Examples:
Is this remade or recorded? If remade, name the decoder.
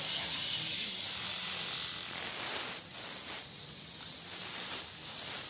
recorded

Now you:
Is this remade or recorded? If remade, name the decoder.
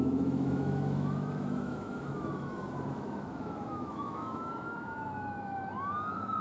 remade, autoencoder, DAC-VAE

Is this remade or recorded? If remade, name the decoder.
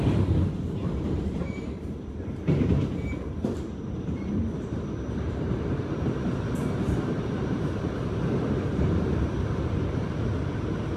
remade, vocoder, BigVGAN v2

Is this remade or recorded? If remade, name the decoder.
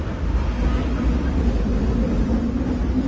recorded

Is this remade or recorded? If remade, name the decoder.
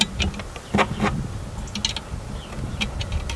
recorded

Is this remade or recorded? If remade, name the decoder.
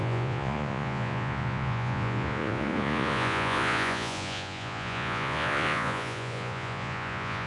remade, vocoder, Vocos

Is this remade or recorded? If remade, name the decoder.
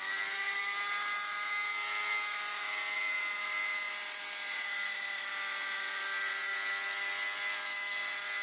recorded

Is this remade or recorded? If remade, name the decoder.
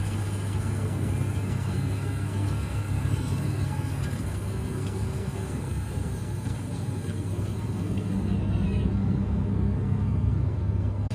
remade, codec, SNAC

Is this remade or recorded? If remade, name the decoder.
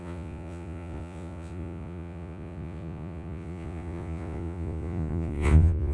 remade, vocoder, Vocos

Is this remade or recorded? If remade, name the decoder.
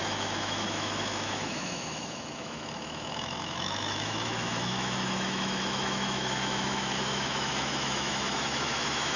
remade, autoencoder, DAC-VAE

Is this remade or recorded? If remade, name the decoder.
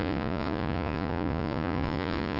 remade, vocoder, Vocos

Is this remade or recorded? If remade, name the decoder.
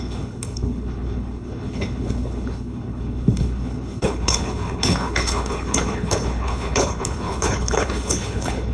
remade, codec, HILCodec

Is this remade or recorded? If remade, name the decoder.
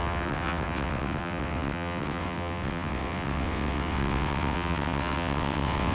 remade, vocoder, WaveNeXt